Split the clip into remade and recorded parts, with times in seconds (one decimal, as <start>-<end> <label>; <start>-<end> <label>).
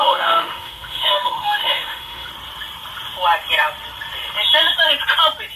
0.0-2.3 remade; 2.3-5.6 recorded